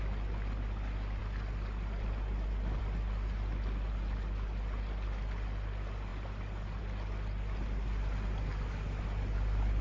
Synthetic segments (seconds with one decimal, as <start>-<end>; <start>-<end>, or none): none